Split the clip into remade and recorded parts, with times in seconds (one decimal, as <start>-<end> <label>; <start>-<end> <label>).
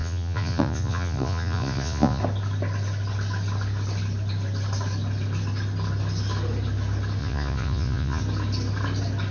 0.0-2.2 remade; 2.2-7.2 recorded; 7.2-8.2 remade; 8.2-9.3 recorded